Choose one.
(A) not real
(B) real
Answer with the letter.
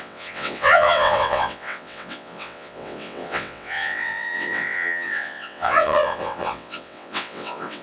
A